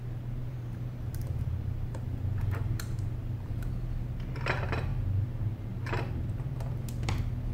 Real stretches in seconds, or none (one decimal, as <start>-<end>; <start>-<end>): 0.0-0.4; 3.7-7.5